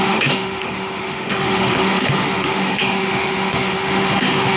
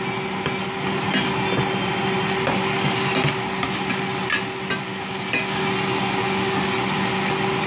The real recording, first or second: second